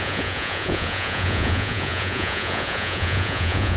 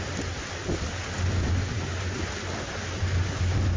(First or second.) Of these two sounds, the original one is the second